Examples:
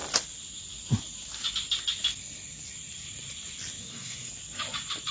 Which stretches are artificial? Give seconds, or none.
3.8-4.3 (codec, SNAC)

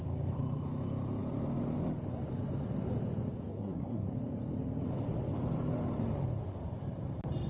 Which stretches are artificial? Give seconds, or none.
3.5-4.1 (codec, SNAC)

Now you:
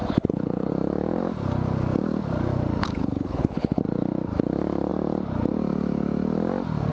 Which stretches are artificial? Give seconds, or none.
0.0-0.7 (codec, HILCodec); 2.8-3.8

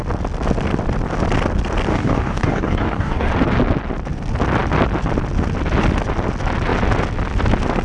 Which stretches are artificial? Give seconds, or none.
1.9-3.3 (codec, DAC)